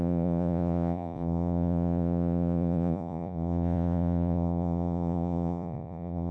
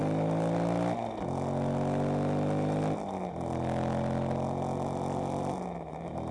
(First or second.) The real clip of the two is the second